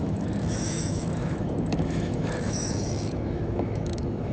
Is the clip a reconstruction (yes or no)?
yes